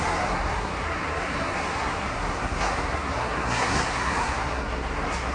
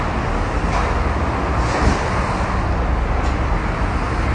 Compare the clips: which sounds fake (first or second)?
first